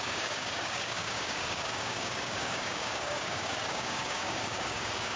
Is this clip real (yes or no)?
no